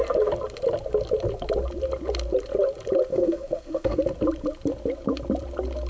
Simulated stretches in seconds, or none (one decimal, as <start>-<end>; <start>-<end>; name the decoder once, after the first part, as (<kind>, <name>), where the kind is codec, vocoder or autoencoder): 3.1-4.0 (codec, SNAC)